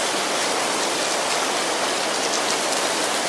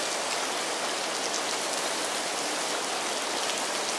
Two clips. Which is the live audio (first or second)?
second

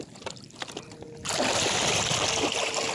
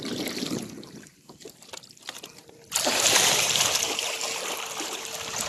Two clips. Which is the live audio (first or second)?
first